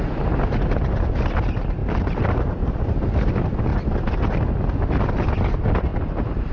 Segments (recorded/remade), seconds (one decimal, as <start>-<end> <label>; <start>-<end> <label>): 0.0-1.8 recorded; 1.8-3.3 remade; 3.3-6.5 recorded